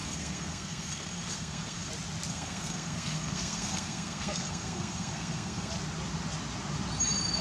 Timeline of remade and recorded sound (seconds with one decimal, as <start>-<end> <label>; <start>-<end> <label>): 0.0-1.9 remade; 1.9-2.3 recorded; 2.3-5.7 remade; 5.7-7.4 recorded